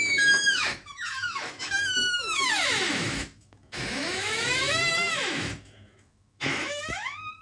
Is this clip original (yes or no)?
no